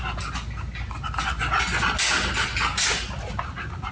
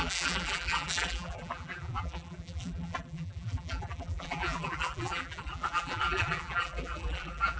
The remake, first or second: second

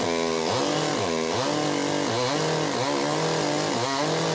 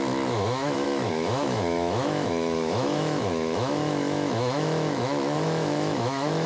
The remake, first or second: second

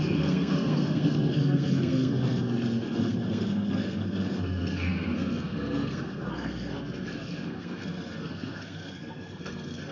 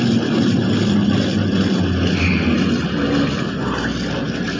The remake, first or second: first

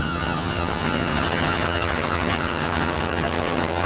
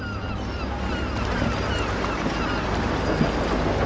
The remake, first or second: first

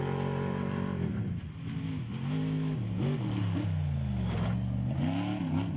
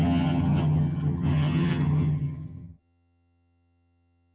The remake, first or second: second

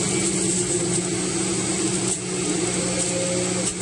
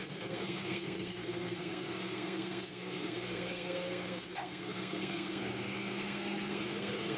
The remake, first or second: second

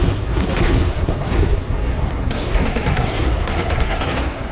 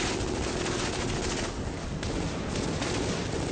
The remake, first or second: first